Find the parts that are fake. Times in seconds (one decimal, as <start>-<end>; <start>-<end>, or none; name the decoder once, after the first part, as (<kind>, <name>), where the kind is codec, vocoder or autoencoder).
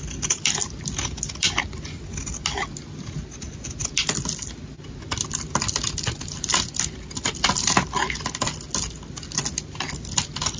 none